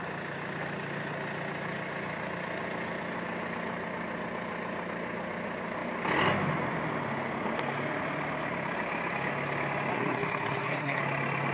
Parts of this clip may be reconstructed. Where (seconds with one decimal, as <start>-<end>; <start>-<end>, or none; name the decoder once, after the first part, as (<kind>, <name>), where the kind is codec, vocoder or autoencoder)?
9.9-11.0 (codec, SNAC)